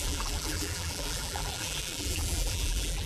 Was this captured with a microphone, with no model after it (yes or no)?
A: no